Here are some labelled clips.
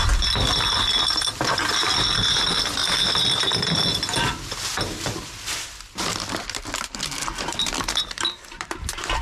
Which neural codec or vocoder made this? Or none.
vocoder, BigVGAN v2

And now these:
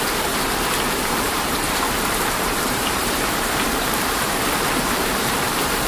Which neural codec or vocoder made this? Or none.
vocoder, BigVGAN v2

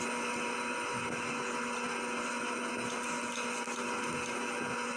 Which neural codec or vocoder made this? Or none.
none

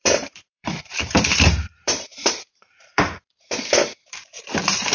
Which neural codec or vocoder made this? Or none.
vocoder, BigVGAN v2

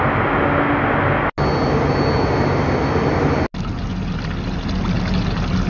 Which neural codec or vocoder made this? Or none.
none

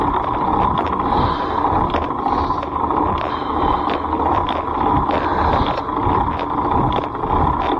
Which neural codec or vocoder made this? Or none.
none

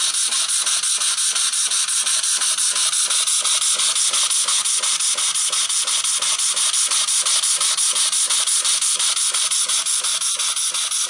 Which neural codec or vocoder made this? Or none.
none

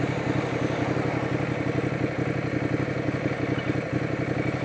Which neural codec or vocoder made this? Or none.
none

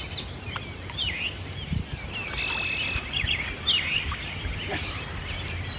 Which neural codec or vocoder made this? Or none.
none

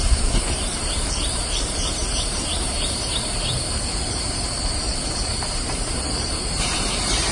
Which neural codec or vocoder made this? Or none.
vocoder, BigVGAN v2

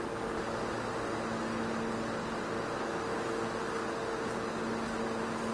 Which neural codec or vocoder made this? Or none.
none